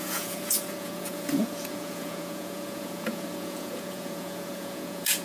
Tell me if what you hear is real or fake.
fake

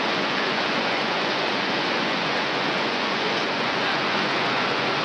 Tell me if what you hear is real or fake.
fake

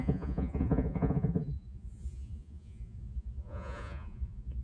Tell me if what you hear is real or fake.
fake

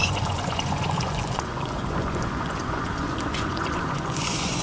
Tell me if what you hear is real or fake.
fake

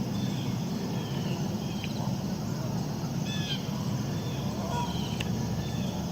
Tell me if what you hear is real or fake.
real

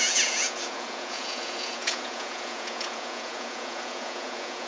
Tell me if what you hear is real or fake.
fake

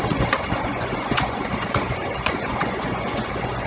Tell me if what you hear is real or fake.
fake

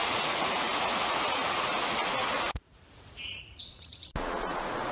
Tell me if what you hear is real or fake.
fake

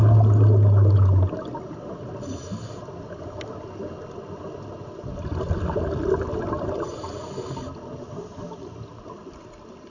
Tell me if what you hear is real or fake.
real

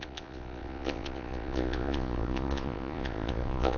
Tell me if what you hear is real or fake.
fake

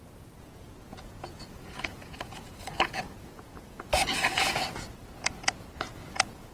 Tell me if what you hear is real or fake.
fake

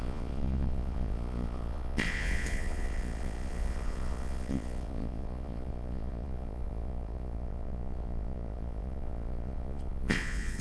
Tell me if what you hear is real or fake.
fake